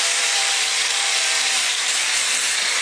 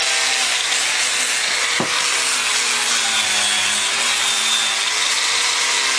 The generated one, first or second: first